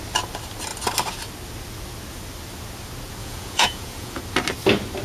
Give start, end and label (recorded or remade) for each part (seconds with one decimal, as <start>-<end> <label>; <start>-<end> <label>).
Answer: 0.0-3.2 recorded; 3.2-4.2 remade; 4.2-5.0 recorded